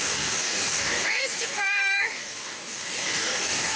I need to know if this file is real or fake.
fake